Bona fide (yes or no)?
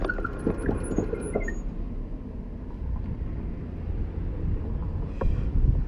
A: yes